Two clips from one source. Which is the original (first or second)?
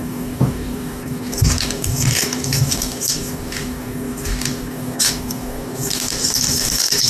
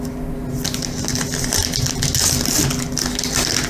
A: second